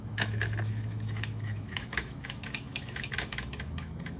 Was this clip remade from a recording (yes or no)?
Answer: yes